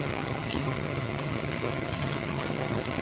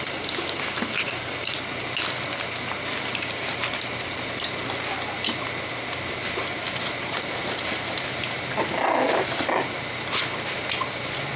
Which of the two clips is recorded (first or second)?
second